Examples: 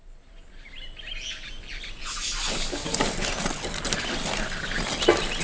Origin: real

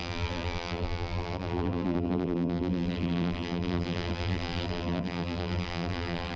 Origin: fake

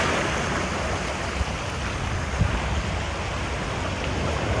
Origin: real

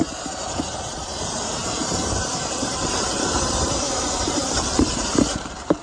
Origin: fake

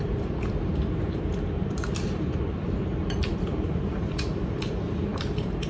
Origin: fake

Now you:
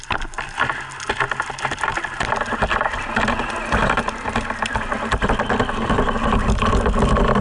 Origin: real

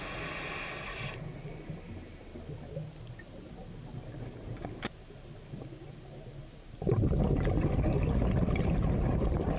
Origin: real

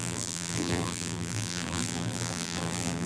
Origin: fake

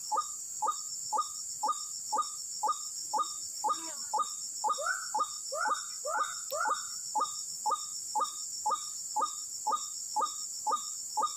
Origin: real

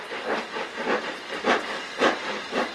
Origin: fake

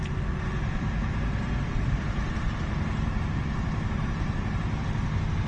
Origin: fake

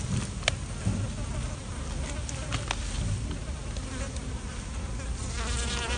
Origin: real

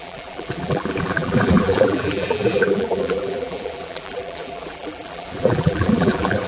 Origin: fake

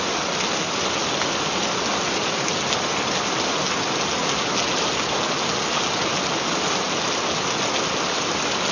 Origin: real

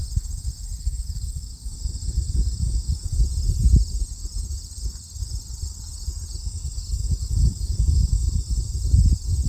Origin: fake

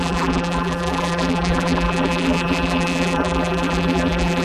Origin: fake